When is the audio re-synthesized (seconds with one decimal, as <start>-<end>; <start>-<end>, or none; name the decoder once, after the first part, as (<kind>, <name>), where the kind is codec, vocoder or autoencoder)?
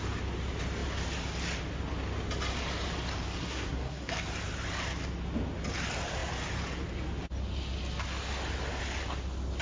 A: 3.4-4.1 (codec, SNAC)